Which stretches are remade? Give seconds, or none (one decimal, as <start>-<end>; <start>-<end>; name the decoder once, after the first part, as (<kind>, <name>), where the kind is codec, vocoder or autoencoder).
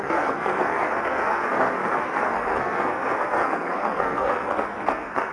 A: 0.0-5.3 (codec, SNAC)